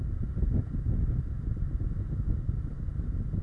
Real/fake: real